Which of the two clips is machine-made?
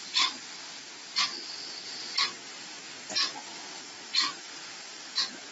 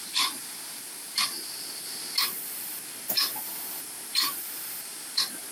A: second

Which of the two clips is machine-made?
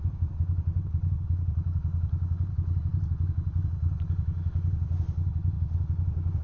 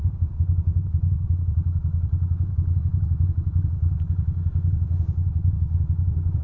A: second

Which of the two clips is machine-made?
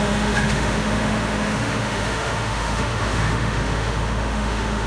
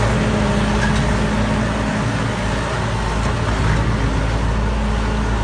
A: first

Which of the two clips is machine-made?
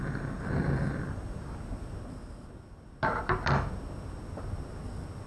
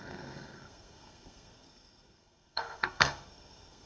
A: second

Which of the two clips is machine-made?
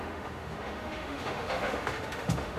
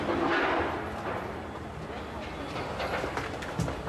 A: first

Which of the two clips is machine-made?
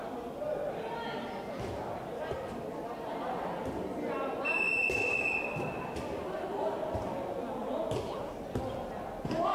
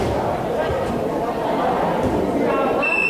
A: second